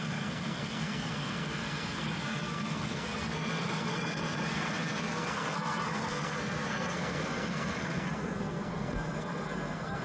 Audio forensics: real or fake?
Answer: fake